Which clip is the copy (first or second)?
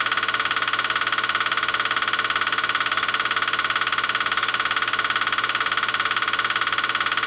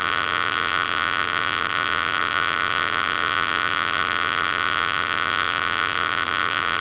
second